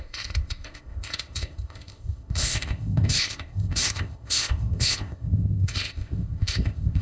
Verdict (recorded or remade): remade